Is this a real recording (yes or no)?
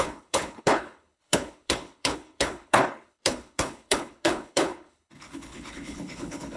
no